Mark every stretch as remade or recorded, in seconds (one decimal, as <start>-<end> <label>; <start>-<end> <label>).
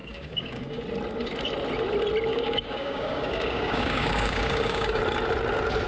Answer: 0.0-0.8 remade; 0.8-2.3 recorded; 2.3-5.0 remade; 5.0-5.9 recorded